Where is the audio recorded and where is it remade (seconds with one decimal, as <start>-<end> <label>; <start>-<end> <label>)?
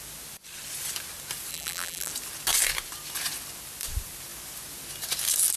0.0-1.5 recorded; 1.5-2.1 remade; 2.1-5.6 recorded